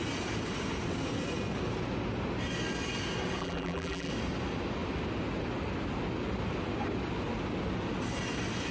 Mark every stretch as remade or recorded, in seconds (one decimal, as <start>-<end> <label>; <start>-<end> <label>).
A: 0.0-3.4 recorded; 3.4-4.1 remade; 4.1-8.7 recorded